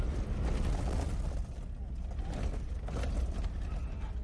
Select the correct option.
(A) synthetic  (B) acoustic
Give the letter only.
B